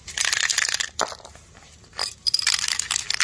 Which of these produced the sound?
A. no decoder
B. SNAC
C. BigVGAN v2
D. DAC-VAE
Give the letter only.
A